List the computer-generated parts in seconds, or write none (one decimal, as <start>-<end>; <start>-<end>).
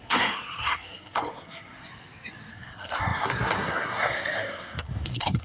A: 0.0-1.9; 2.5-5.4